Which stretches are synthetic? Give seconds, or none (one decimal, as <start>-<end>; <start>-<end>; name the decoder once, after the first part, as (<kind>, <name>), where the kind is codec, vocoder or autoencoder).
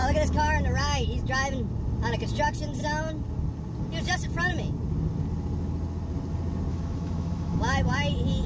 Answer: 6.7-7.6 (autoencoder, DAC-VAE)